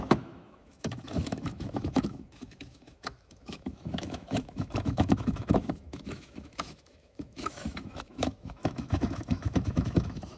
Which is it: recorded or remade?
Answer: remade